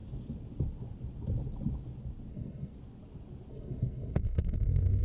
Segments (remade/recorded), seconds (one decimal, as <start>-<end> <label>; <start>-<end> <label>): 0.0-2.3 recorded; 2.3-2.7 remade; 2.7-3.5 recorded; 3.5-5.0 remade